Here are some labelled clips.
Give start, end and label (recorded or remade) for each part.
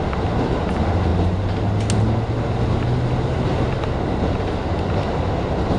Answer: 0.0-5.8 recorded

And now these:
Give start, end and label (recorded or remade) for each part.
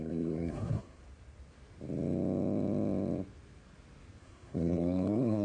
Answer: 0.0-1.0 remade; 1.0-4.2 recorded; 4.2-5.4 remade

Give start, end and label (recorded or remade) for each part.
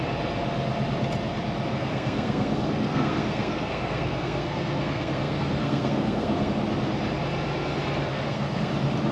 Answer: 0.0-1.7 recorded; 1.7-6.5 remade; 6.5-8.1 recorded; 8.1-8.7 remade; 8.7-9.1 recorded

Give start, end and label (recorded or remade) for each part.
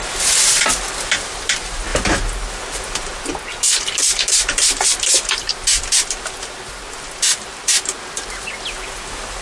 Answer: 0.0-9.4 recorded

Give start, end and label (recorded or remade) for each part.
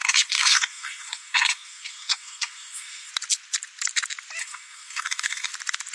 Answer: 0.0-3.1 remade; 3.1-4.4 recorded; 4.4-5.5 remade; 5.5-5.9 recorded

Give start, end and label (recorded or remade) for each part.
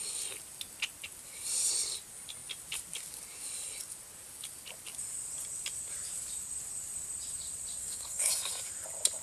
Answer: 0.0-7.8 recorded; 7.8-8.3 remade; 8.3-9.2 recorded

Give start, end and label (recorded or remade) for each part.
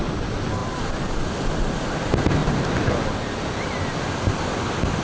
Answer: 0.0-5.0 recorded